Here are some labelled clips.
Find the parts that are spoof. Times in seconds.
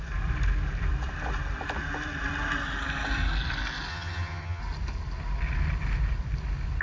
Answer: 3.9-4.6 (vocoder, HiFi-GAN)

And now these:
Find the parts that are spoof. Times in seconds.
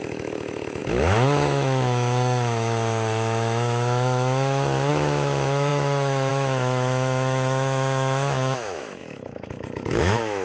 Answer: 0.0-10.4 (autoencoder, DAC-VAE)